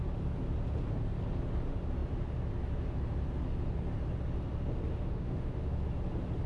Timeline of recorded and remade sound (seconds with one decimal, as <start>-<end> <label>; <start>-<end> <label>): 0.0-4.9 recorded; 4.9-5.8 remade; 5.8-6.5 recorded